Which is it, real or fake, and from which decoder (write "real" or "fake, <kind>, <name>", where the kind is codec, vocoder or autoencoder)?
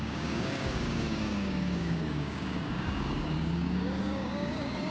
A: fake, codec, DAC